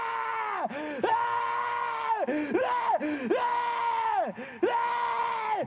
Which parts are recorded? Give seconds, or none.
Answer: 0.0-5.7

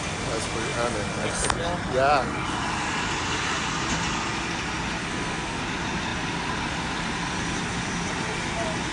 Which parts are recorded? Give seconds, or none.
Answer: 0.0-5.0; 5.6-8.9

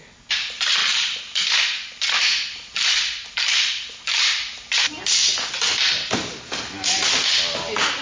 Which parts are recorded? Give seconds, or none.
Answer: 0.0-8.0

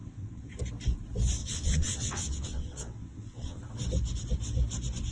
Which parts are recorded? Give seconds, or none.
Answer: 0.5-1.4; 3.6-5.1

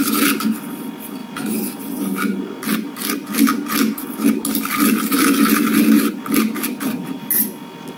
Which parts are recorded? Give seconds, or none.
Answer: 0.0-8.0

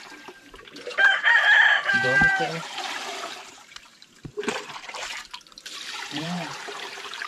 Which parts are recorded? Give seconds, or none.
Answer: 3.9-4.6